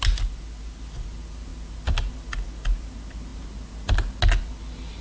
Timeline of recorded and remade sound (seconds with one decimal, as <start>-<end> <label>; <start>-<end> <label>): 0.0-5.0 recorded